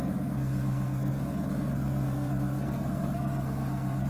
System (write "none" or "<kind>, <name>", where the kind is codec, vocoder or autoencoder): codec, SNAC